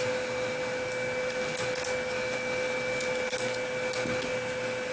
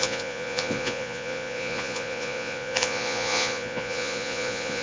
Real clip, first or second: first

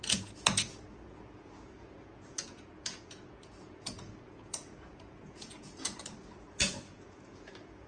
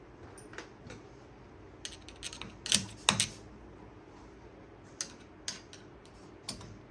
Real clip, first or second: second